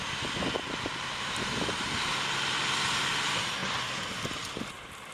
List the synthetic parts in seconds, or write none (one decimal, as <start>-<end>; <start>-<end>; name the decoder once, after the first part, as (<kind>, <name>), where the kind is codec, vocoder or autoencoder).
none